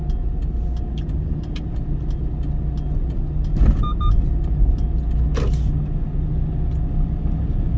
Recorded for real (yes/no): yes